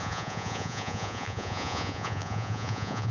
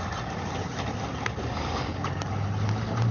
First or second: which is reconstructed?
first